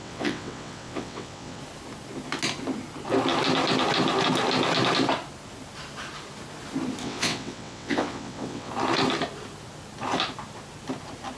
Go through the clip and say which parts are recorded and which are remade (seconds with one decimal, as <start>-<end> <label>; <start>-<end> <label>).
0.0-1.6 remade; 1.6-7.0 recorded; 7.0-8.7 remade; 8.7-11.4 recorded